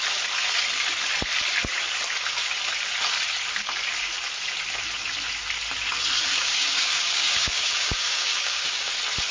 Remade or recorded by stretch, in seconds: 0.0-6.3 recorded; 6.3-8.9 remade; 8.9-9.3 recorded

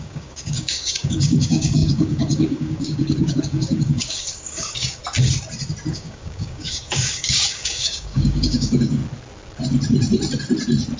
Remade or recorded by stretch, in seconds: 0.0-5.0 remade; 5.0-5.9 recorded; 5.9-9.0 remade; 9.0-11.0 recorded

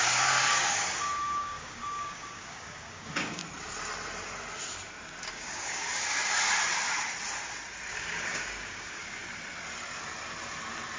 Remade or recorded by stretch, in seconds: 0.0-3.4 remade; 3.4-5.3 recorded; 5.3-6.2 remade; 6.2-7.9 recorded; 7.9-9.2 remade; 9.2-11.0 recorded

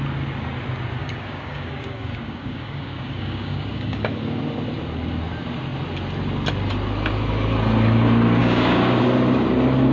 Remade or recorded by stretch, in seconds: 0.0-1.0 recorded; 1.0-4.4 remade; 4.4-8.4 recorded; 8.4-9.0 remade; 9.0-9.9 recorded

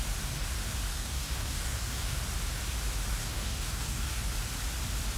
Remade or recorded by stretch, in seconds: 0.0-0.9 recorded; 0.9-2.2 remade; 2.2-3.2 recorded; 3.2-4.3 remade; 4.3-5.2 recorded